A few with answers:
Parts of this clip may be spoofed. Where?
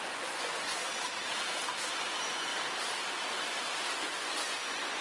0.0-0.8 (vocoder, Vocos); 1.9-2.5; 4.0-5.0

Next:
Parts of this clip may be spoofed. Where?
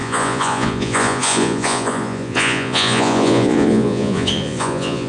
0.0-5.1 (vocoder, Vocos)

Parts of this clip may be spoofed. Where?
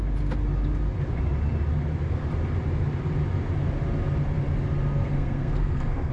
4.9-6.1 (codec, SNAC)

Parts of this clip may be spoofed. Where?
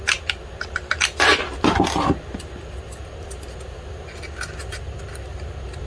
none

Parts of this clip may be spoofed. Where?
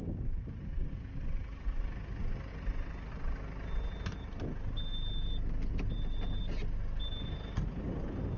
2.5-3.1 (vocoder, BigVGAN v2); 4.9-6.4